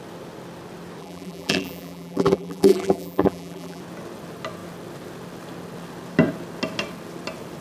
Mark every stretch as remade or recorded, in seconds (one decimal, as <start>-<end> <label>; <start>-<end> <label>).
0.0-1.0 recorded; 1.0-3.8 remade; 3.8-7.6 recorded